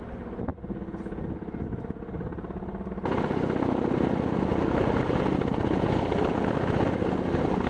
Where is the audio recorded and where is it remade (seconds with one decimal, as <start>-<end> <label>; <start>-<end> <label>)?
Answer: 0.0-7.7 recorded